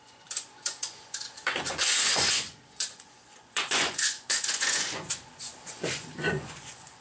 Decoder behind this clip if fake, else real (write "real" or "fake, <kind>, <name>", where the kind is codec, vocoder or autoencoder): fake, vocoder, Vocos